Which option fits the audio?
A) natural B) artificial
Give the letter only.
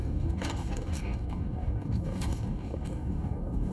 B